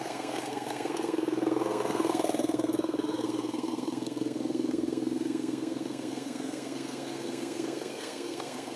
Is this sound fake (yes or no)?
yes